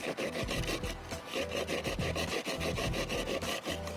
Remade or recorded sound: recorded